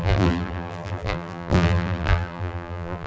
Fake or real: fake